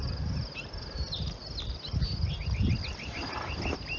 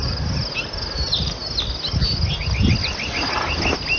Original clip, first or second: second